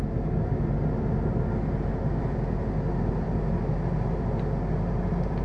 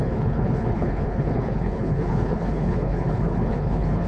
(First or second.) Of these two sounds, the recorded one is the first